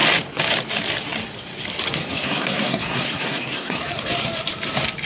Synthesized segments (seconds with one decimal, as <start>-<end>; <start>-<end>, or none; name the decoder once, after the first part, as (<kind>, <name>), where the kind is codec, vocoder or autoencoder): 2.0-3.8 (codec, SNAC)